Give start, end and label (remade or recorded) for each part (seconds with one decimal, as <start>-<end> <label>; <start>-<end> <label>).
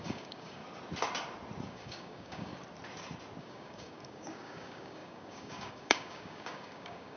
0.0-0.6 remade; 0.6-1.7 recorded; 1.7-2.5 remade; 2.5-3.4 recorded; 3.4-7.2 remade